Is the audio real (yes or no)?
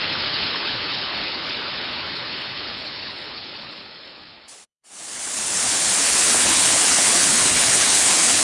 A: no